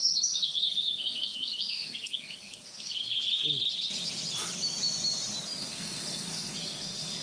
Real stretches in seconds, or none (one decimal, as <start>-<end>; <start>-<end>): 3.0-5.6